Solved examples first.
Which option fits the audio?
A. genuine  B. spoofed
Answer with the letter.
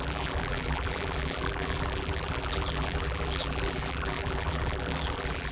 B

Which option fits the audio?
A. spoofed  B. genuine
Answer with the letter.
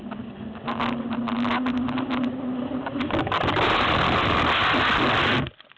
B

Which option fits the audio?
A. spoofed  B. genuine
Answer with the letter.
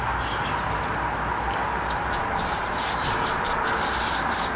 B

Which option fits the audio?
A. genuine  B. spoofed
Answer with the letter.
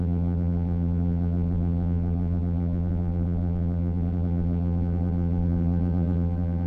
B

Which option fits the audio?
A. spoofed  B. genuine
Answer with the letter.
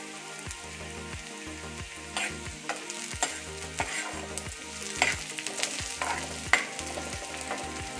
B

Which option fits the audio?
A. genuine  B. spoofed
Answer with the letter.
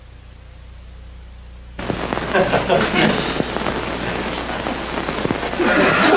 A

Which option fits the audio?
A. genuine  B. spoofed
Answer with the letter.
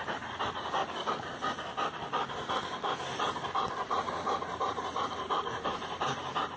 A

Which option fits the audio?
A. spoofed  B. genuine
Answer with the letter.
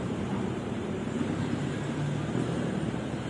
A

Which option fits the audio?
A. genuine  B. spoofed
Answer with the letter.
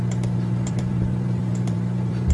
B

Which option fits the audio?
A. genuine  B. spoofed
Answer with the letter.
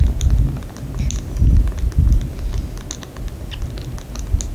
A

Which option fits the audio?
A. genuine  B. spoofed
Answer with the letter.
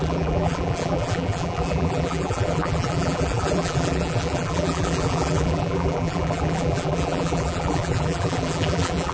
B